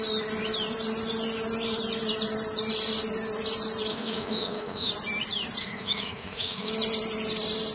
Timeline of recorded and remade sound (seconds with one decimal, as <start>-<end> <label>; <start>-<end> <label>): 0.0-3.9 recorded; 3.9-4.9 remade; 4.9-5.6 recorded; 5.6-6.7 remade; 6.7-7.7 recorded